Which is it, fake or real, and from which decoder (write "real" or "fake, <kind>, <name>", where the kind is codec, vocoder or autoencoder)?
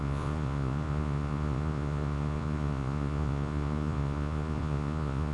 fake, vocoder, Vocos